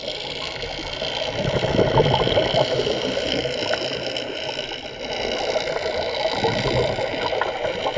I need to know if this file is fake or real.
real